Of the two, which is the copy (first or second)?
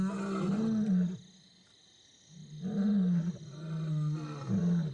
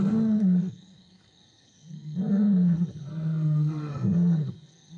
second